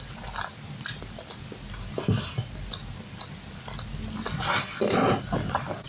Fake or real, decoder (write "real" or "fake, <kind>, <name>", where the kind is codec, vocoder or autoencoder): real